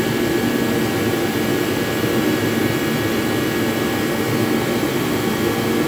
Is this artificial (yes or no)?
no